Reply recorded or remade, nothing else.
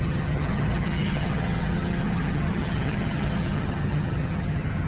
remade